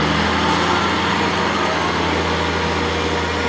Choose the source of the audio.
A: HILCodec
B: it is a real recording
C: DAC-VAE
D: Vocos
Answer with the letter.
B